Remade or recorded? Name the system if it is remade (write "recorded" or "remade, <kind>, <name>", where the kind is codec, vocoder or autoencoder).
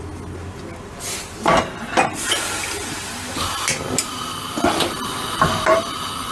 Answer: recorded